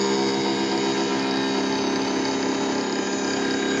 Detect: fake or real real